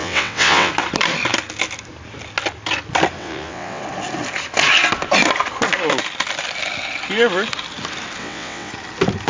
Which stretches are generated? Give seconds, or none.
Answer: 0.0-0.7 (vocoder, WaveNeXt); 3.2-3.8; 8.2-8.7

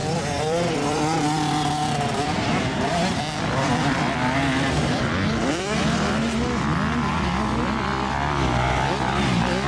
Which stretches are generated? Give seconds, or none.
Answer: 0.0-4.8 (vocoder, BigVGAN v2)

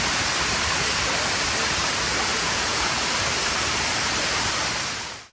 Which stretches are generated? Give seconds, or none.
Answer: 2.3-3.0 (vocoder, Vocos)

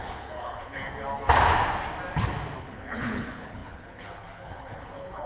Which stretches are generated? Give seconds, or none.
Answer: 0.0-0.8 (codec, HILCodec); 2.6-5.3